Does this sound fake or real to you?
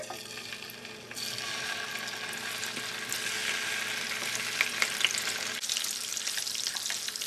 real